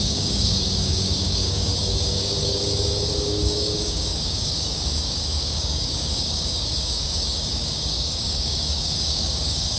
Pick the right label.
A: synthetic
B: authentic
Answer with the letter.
A